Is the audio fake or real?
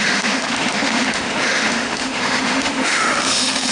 fake